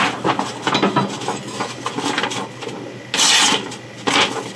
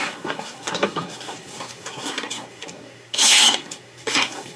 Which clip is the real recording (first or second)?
first